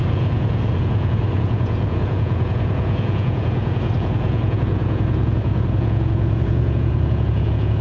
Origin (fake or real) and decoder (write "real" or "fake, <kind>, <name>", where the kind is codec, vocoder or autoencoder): fake, vocoder, Vocos